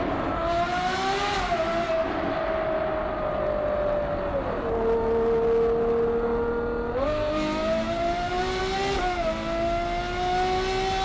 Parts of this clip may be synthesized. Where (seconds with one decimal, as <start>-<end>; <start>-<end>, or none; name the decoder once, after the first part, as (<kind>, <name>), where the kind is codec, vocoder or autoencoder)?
7.6-8.6 (vocoder, BigVGAN v2)